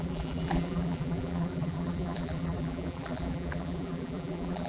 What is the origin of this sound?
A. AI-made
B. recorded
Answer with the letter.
A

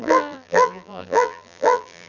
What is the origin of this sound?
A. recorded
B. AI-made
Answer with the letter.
B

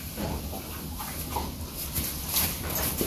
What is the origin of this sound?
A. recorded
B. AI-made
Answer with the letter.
A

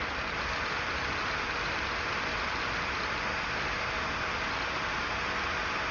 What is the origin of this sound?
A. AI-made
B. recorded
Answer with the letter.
B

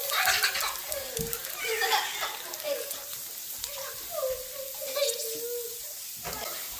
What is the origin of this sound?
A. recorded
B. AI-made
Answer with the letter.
A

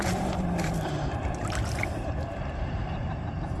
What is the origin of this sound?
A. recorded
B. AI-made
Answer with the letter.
B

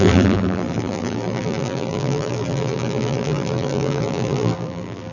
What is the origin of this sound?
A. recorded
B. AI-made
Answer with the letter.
B